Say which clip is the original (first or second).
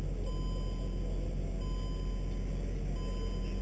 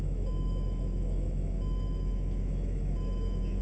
first